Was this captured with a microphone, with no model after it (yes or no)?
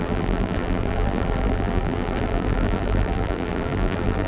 no